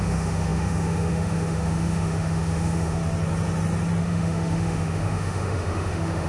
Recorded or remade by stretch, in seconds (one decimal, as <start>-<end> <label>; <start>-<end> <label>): 0.0-3.0 remade; 3.0-4.0 recorded; 4.0-6.3 remade